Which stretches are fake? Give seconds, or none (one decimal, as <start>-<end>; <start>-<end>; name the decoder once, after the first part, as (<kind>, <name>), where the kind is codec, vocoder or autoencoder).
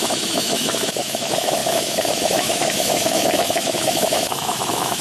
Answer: 0.0-5.0 (autoencoder, DAC-VAE)